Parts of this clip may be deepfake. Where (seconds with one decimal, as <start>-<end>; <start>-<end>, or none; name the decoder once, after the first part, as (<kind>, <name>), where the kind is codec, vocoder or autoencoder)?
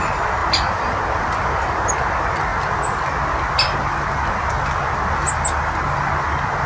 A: none